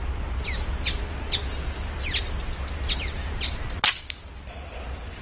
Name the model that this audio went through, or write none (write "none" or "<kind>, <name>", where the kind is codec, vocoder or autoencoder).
none